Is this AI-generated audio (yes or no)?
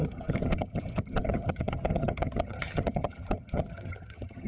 yes